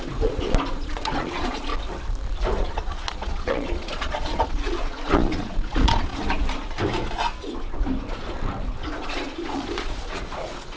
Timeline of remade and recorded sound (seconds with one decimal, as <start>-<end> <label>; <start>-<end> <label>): 0.0-1.7 remade; 1.7-2.6 recorded; 2.6-6.1 remade; 6.1-9.0 recorded; 9.0-10.8 remade